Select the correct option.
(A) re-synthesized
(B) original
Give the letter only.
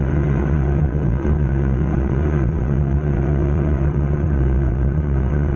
A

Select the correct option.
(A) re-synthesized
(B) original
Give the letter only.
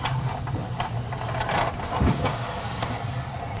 B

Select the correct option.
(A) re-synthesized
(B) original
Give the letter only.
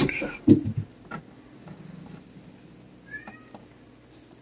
B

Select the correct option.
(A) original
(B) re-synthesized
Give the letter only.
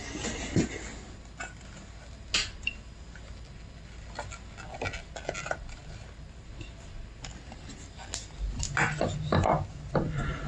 A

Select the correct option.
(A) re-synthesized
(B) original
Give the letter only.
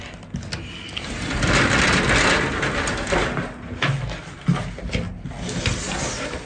B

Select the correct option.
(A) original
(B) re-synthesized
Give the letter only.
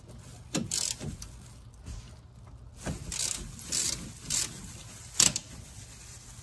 A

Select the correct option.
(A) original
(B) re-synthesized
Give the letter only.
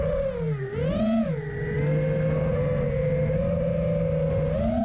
A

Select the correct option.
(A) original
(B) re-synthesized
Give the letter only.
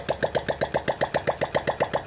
A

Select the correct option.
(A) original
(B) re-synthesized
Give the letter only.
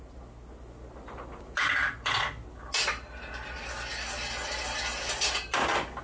A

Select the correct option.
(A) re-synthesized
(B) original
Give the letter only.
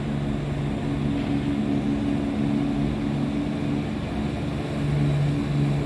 B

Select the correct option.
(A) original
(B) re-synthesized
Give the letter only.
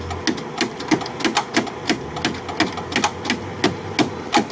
A